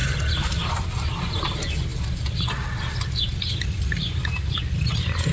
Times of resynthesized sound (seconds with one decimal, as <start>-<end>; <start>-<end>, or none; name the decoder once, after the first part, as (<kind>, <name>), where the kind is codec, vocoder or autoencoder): none